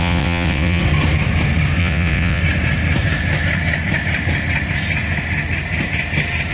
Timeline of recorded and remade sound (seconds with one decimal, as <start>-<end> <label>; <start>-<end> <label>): 0.0-0.8 remade; 0.8-1.8 recorded; 1.8-2.4 remade; 2.4-6.5 recorded